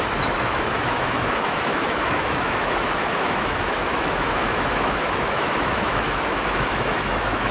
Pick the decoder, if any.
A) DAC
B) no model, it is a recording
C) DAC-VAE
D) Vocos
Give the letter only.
C